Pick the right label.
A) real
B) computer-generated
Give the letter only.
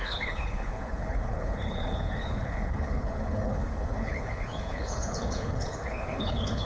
B